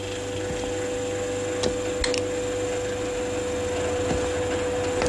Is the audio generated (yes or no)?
no